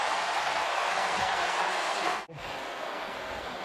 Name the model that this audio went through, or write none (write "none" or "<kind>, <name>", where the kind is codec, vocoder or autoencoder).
codec, SNAC